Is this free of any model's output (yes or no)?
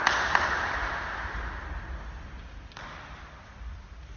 yes